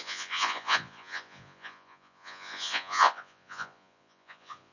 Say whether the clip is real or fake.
fake